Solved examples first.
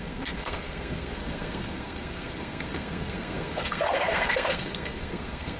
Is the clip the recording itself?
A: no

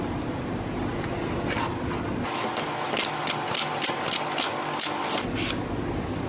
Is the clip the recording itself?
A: yes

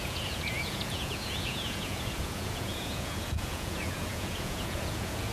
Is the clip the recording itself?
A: no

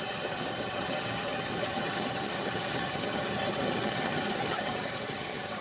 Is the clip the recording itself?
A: no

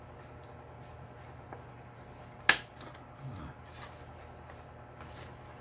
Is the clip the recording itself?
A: yes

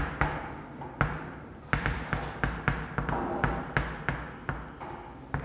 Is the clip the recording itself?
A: yes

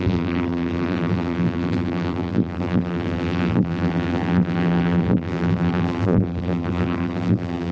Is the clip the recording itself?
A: no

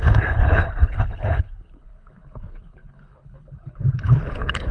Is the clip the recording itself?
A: no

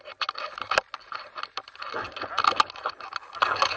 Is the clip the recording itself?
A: yes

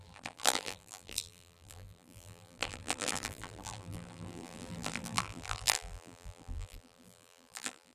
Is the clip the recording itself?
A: no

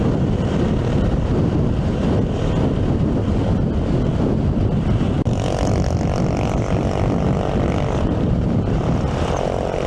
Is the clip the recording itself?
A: yes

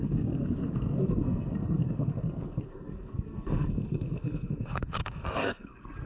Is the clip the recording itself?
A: no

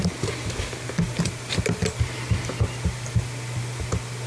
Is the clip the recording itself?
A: yes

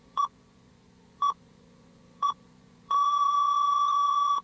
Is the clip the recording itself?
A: no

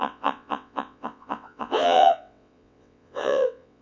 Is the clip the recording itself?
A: no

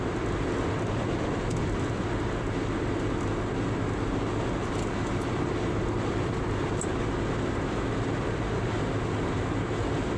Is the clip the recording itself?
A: yes